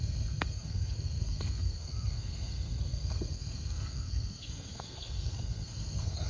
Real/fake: fake